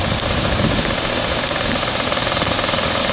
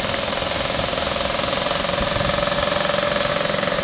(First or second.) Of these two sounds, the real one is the second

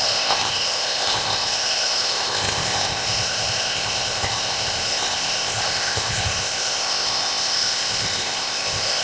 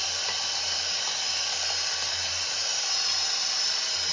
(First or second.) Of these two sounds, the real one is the second